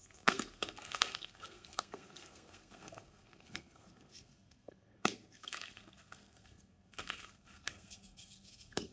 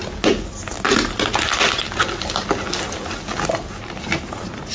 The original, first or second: second